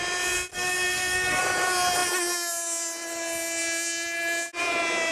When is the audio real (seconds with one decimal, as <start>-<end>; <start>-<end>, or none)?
0.0-0.5; 1.4-5.1